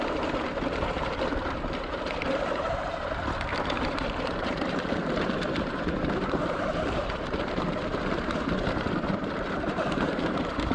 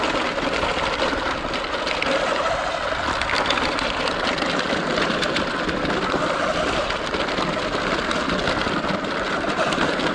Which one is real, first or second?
second